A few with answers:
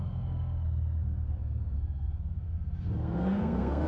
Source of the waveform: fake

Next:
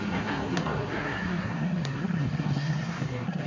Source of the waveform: fake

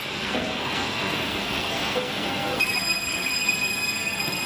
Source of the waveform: fake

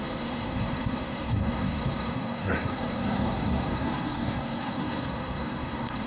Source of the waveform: fake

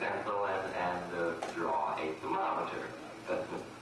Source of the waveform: real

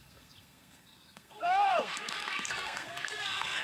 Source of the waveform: fake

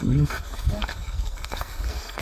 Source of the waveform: fake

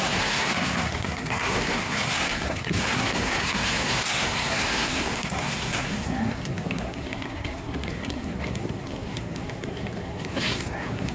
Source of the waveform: fake